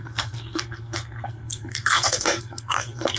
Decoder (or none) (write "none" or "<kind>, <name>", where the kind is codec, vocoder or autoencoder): codec, SNAC